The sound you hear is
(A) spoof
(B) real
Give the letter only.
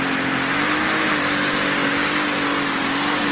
B